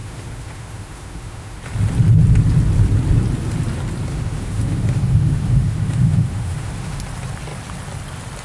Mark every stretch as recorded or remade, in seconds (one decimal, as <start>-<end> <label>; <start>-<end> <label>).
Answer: 0.0-1.6 remade; 1.6-4.1 recorded; 4.1-7.0 remade; 7.0-8.4 recorded